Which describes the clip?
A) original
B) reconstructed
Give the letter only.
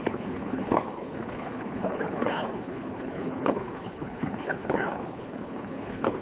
B